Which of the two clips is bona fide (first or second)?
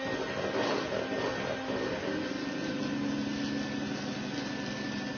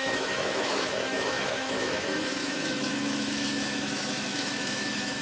first